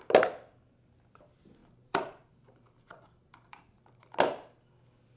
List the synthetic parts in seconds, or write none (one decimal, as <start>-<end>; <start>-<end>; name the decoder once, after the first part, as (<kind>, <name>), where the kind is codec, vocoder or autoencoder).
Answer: 1.6-3.8 (vocoder, BigVGAN v2)